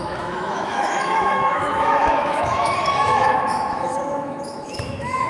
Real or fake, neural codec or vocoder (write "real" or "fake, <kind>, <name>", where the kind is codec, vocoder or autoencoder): fake, autoencoder, DAC-VAE